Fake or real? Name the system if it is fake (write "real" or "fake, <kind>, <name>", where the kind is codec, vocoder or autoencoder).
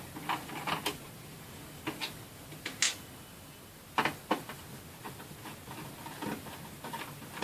real